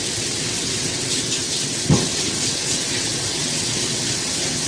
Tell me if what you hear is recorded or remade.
remade